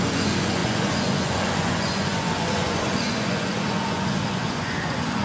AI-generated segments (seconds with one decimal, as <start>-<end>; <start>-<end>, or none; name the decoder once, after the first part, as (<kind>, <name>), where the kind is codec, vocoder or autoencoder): 0.0-5.2 (vocoder, Vocos)